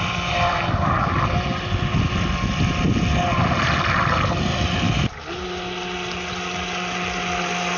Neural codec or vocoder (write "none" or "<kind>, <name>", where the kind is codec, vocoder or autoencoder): none